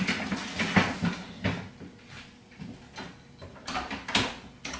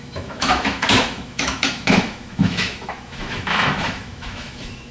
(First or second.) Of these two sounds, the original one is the first